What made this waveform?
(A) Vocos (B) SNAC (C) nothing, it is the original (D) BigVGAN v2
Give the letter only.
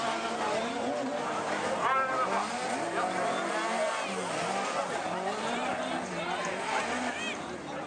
C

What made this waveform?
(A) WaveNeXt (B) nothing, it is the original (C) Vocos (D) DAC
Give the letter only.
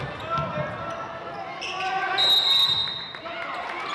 B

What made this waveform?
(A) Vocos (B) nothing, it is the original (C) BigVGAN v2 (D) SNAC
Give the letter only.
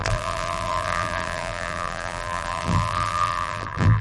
C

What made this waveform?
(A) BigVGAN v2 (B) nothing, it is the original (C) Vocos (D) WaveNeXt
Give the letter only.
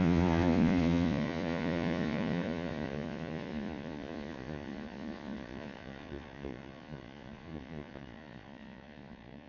C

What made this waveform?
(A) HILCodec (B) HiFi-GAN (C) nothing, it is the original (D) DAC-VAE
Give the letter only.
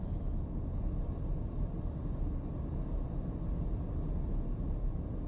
C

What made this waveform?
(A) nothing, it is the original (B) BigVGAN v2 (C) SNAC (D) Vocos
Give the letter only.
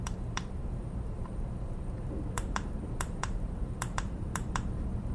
B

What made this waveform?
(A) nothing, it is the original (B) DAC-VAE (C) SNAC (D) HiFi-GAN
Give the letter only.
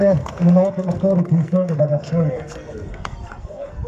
C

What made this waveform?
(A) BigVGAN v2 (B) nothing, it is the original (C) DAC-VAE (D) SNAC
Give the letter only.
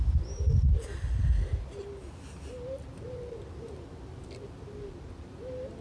B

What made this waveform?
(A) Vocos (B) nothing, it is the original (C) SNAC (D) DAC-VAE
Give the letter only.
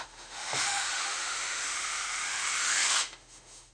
D